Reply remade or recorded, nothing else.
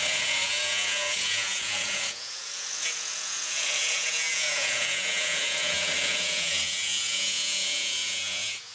remade